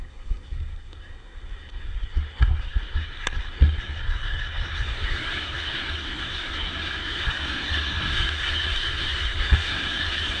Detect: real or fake fake